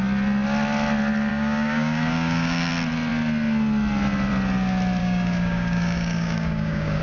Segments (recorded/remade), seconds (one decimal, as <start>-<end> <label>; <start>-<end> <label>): 0.0-1.3 recorded; 1.3-2.7 remade; 2.7-5.0 recorded; 5.0-7.0 remade